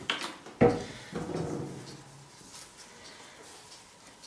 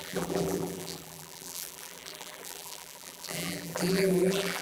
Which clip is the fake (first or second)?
second